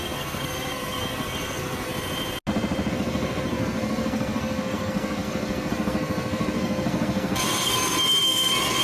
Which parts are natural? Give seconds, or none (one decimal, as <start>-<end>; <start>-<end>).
1.9-2.9

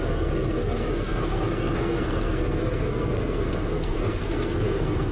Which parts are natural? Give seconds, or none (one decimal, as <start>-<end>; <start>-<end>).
none

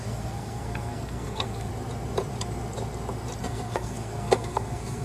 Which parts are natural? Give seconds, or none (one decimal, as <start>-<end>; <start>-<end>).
1.7-3.4